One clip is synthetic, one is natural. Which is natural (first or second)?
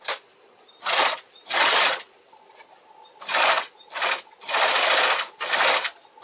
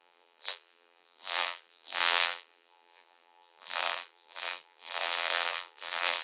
first